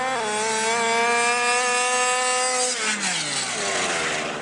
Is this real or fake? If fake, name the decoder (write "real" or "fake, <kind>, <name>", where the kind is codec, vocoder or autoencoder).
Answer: real